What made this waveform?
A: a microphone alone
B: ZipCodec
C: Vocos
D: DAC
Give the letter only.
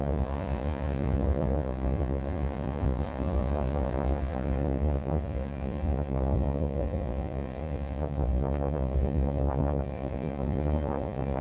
C